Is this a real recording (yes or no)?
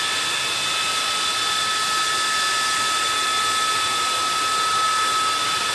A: yes